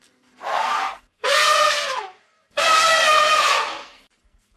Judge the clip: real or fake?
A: fake